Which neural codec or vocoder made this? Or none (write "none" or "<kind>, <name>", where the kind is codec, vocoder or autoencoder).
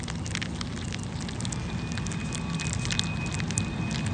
none